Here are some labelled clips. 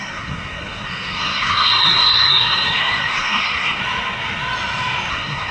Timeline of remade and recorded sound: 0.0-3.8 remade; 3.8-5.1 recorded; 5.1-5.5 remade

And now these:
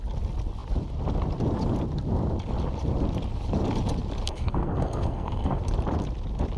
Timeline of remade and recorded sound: 0.0-4.3 recorded; 4.3-5.6 remade; 5.6-6.6 recorded

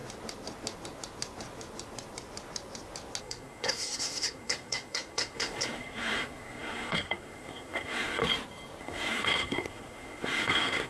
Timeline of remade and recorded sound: 0.0-3.2 recorded; 3.2-8.2 remade; 8.2-8.8 recorded; 8.8-10.9 remade

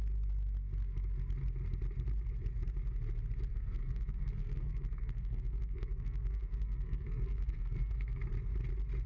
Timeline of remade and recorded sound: 0.0-3.5 recorded; 3.5-8.2 remade; 8.2-9.1 recorded

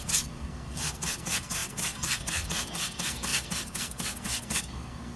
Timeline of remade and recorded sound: 0.0-5.2 remade

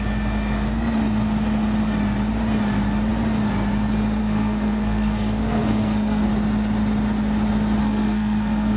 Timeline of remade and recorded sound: 0.0-4.2 recorded; 4.2-6.3 remade; 6.3-7.8 recorded; 7.8-8.8 remade

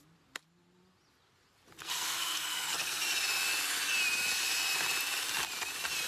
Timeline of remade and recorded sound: 0.0-1.8 recorded; 1.8-3.0 remade; 3.0-6.1 recorded

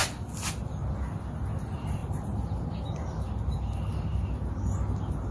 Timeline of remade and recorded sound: 0.0-5.3 recorded